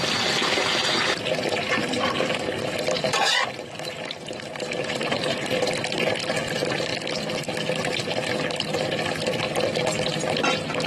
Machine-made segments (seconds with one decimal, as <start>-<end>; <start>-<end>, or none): 0.0-6.9; 7.8-9.7